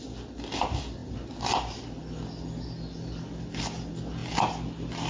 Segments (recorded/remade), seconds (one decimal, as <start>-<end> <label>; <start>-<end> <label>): 0.0-5.1 recorded